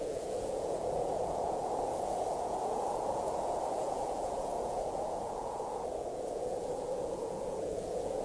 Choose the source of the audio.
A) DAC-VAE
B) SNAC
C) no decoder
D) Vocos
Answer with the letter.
D